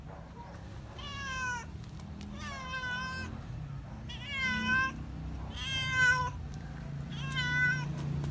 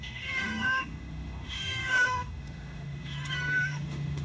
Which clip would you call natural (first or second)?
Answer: first